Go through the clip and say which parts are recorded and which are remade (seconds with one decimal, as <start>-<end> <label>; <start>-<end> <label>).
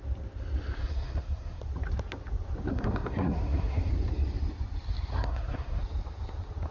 0.0-0.8 recorded; 0.8-1.6 remade; 1.6-2.7 recorded; 2.7-3.9 remade; 3.9-5.1 recorded; 5.1-5.8 remade; 5.8-6.7 recorded